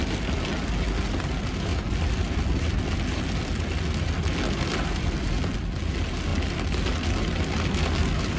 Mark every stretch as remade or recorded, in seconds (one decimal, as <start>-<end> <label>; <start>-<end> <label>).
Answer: 0.0-8.4 recorded

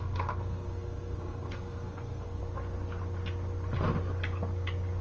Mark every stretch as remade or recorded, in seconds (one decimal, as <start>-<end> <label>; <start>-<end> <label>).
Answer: 0.0-2.4 remade; 2.4-5.0 recorded

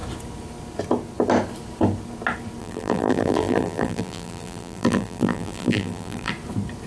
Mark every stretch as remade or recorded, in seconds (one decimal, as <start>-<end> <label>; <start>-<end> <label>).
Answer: 0.0-2.6 recorded; 2.6-6.3 remade; 6.3-6.9 recorded

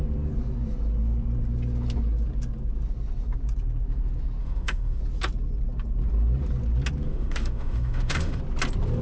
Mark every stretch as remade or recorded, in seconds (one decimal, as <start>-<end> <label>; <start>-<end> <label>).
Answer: 0.0-4.4 recorded; 4.4-5.0 remade; 5.0-7.1 recorded; 7.1-8.4 remade; 8.4-9.0 recorded